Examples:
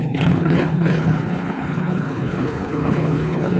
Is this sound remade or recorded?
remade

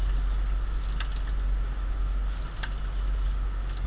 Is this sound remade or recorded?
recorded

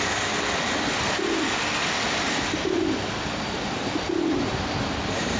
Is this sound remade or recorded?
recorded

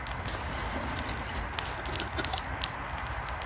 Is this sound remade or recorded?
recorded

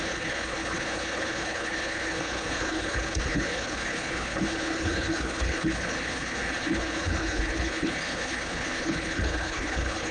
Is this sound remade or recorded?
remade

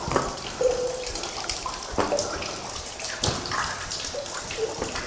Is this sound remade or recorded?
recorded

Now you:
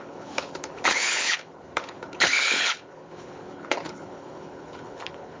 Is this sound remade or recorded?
remade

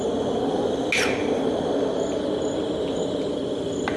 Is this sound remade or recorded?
recorded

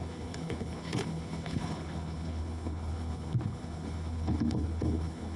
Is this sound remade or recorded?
remade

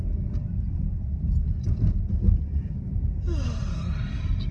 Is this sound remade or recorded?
recorded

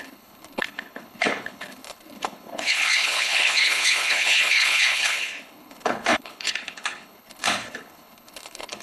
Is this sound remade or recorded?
remade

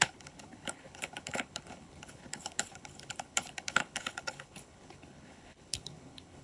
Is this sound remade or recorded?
remade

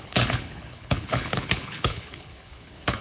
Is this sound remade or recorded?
remade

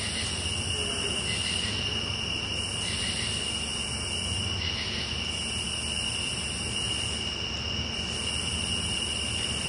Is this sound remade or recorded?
recorded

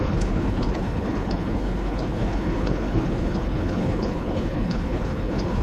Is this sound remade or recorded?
remade